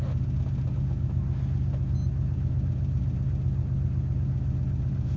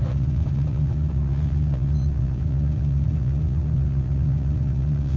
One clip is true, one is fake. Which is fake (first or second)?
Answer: second